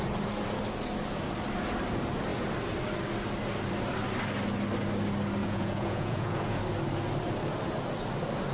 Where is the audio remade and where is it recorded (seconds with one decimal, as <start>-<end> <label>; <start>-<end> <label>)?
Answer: 0.0-5.4 recorded; 5.4-6.6 remade; 6.6-8.5 recorded